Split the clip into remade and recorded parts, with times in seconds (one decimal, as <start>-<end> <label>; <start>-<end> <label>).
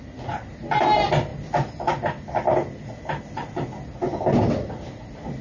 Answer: 0.0-5.4 recorded